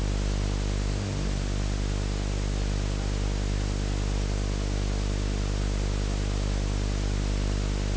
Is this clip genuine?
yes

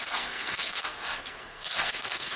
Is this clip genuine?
no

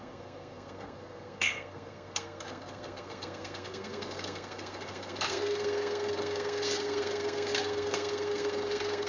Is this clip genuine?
no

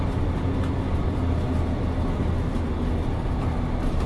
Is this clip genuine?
yes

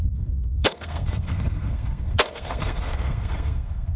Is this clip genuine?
no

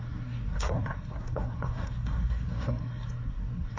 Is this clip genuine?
no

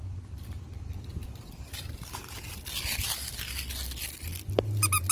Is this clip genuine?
yes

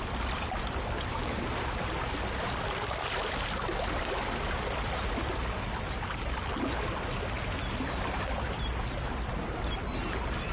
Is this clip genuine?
yes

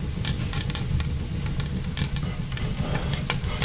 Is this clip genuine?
yes